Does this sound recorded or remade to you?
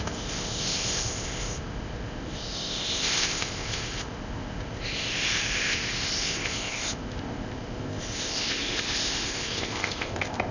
remade